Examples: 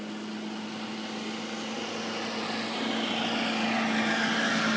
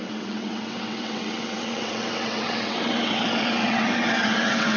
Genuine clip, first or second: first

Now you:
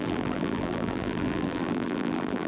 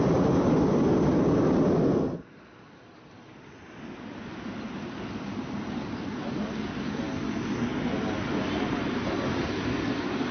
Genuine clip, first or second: second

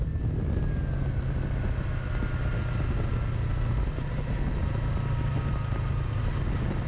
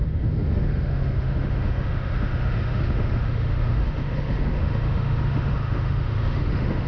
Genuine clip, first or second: first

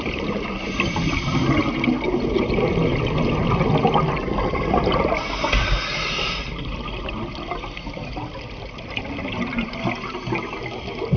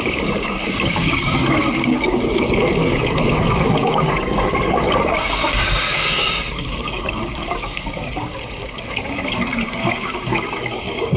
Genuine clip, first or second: first